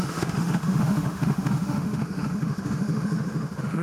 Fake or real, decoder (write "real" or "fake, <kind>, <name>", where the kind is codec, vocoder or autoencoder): fake, autoencoder, DAC-VAE